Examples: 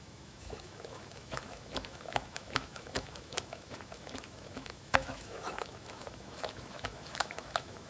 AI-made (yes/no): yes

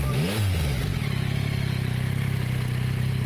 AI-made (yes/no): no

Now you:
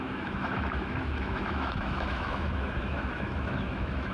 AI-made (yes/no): yes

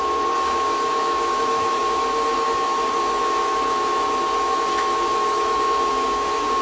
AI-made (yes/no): yes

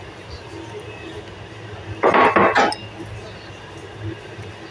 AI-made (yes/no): no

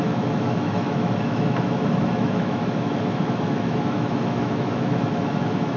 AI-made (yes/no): yes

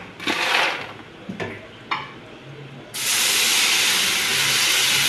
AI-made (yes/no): no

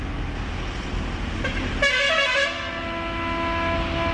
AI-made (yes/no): no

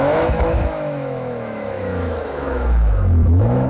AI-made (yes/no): yes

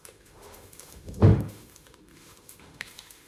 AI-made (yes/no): yes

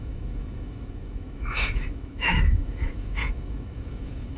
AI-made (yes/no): yes